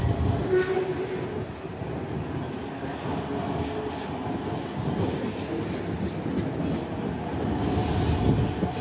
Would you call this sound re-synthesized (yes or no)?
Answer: no